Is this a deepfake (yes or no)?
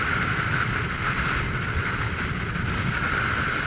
no